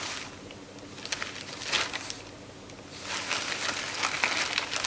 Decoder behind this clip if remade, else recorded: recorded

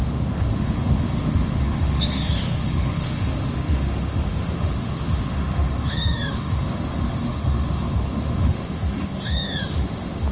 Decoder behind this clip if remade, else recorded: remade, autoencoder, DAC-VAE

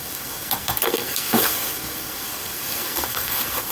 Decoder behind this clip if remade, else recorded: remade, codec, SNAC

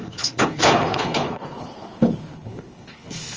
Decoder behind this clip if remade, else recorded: remade, codec, HILCodec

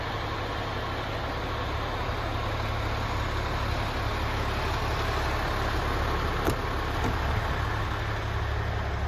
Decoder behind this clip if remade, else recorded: recorded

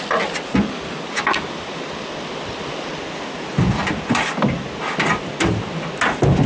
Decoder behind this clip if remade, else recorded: recorded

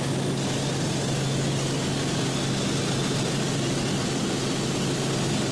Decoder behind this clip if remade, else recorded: recorded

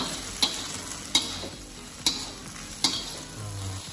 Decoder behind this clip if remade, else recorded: recorded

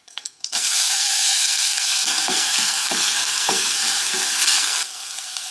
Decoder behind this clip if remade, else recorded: remade, codec, SNAC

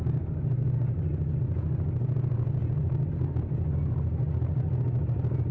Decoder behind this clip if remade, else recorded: recorded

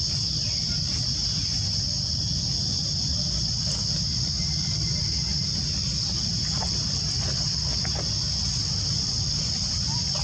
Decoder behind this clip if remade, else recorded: recorded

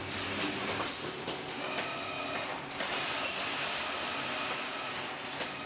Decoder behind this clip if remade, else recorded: recorded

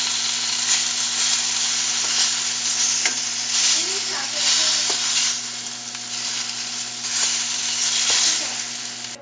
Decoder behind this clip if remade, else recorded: recorded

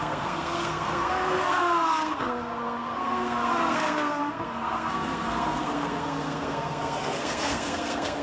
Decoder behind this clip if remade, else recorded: remade, codec, SNAC